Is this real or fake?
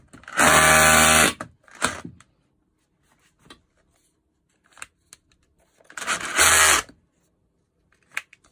real